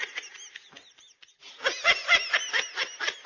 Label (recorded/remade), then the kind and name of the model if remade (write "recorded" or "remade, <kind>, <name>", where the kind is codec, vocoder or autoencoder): recorded